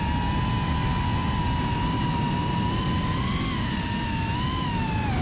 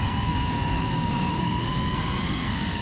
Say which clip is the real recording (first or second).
first